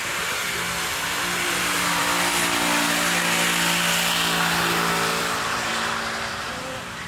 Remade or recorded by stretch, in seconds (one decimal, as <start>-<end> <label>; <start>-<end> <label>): 0.0-0.4 remade; 0.4-1.5 recorded; 1.5-2.0 remade; 2.0-5.2 recorded; 5.2-5.7 remade; 5.7-6.3 recorded; 6.3-7.1 remade